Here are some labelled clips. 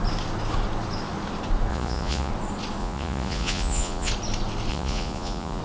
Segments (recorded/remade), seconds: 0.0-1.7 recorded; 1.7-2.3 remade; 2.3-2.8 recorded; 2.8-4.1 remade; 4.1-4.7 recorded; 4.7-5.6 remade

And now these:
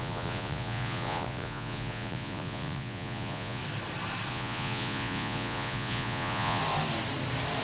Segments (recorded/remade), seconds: 0.0-3.6 remade; 3.6-4.3 recorded; 4.3-6.6 remade; 6.6-7.6 recorded

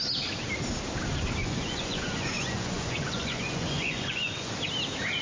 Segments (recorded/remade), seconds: 0.0-1.4 recorded; 1.4-4.5 remade; 4.5-5.2 recorded

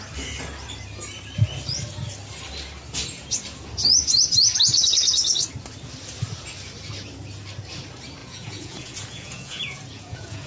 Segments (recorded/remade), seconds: 0.0-8.2 recorded; 8.2-10.5 remade

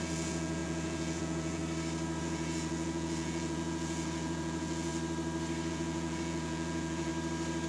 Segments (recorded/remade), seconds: 0.0-1.6 remade; 1.6-2.2 recorded; 2.2-4.9 remade; 4.9-5.7 recorded; 5.7-7.1 remade; 7.1-7.7 recorded

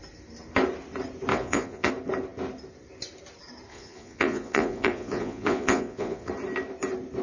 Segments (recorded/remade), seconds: 0.0-1.3 recorded; 1.3-1.9 remade; 1.9-3.7 recorded; 3.7-6.3 remade; 6.3-7.2 recorded